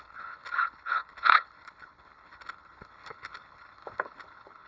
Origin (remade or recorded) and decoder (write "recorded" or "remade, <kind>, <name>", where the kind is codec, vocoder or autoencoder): remade, codec, HILCodec